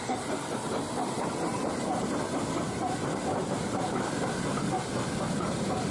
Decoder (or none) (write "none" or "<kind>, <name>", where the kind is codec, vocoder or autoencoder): none